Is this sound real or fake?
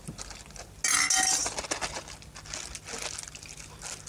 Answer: real